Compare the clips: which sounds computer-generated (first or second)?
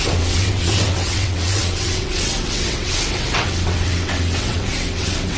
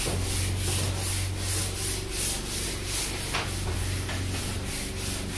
first